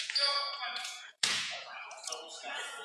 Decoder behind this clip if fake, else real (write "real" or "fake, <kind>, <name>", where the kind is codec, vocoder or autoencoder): fake, vocoder, Vocos